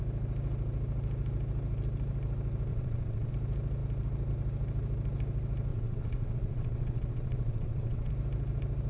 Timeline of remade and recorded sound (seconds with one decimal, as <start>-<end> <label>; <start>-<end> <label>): 0.0-2.7 recorded; 2.7-3.3 remade; 3.3-5.7 recorded; 5.7-8.1 remade; 8.1-8.9 recorded